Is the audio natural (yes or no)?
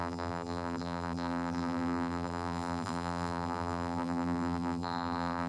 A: no